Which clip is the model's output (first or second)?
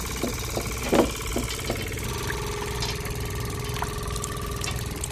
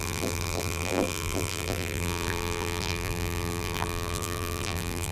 second